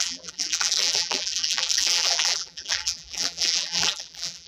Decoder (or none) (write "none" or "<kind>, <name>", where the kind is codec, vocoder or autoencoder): vocoder, BigVGAN v2